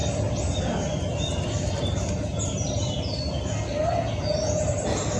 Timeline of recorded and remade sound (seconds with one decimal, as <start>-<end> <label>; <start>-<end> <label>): 0.0-5.2 recorded